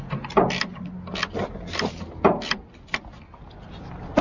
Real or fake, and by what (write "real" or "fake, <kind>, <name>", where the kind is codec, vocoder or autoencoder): real